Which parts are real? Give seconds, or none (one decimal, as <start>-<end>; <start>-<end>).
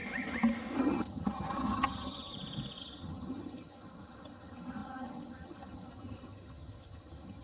0.0-0.8; 2.3-2.8